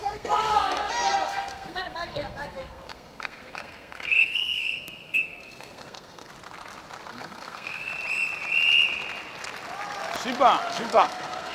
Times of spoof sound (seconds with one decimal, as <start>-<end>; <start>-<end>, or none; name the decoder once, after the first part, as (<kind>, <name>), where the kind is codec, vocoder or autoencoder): 0.0-6.3 (codec, SNAC); 7.1-7.9; 10.7-11.5